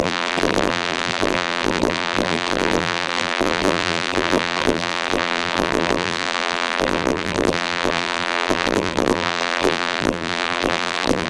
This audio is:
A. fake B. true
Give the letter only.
A